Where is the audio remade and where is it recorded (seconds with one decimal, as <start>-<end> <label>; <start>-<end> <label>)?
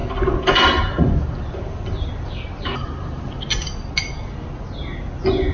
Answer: 0.0-5.5 recorded